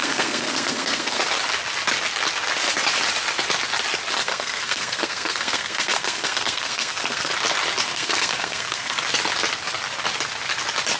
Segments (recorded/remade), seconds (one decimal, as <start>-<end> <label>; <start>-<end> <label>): 0.0-1.2 remade; 1.2-4.2 recorded; 4.2-7.3 remade; 7.3-7.9 recorded; 7.9-9.0 remade; 9.0-11.0 recorded